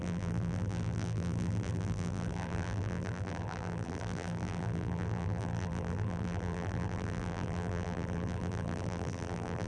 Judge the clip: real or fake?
fake